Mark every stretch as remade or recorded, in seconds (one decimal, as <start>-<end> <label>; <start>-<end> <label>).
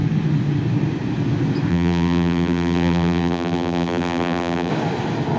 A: 0.0-1.7 recorded; 1.7-4.7 remade; 4.7-5.4 recorded